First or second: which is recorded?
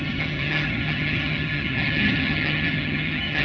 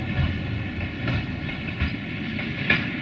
second